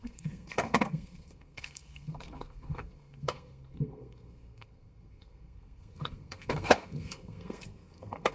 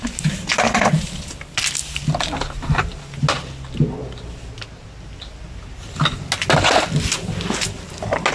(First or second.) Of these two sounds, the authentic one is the second